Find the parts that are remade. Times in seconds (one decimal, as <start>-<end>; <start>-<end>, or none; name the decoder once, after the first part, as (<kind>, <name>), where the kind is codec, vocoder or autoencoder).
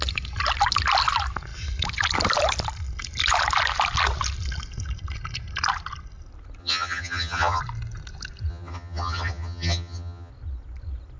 6.6-7.6 (vocoder, HiFi-GAN); 8.5-10.3